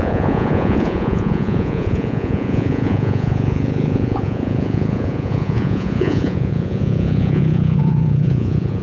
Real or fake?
fake